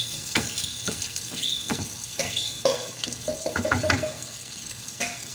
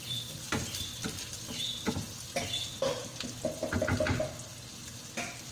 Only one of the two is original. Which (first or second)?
second